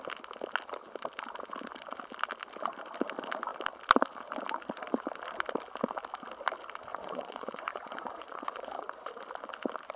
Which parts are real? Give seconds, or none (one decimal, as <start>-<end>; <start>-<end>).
0.0-6.9; 9.1-10.0